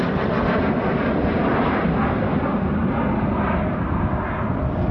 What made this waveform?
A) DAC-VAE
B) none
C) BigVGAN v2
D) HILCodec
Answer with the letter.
B